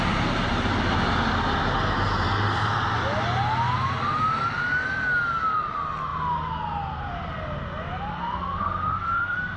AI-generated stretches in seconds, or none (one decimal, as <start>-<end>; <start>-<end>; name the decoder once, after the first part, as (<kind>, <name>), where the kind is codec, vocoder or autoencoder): 8.1-9.6 (codec, SNAC)